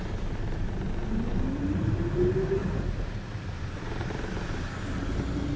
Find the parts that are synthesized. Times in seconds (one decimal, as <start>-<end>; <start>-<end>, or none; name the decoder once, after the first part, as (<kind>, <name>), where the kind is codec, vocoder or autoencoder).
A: 2.6-3.6 (vocoder, BigVGAN v2)